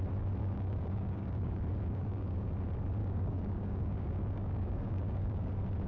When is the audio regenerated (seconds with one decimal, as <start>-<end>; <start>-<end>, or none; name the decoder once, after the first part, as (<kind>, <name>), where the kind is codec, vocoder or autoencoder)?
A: 0.4-2.5 (codec, DAC); 3.0-5.5